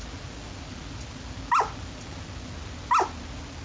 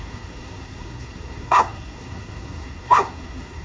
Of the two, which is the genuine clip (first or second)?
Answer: first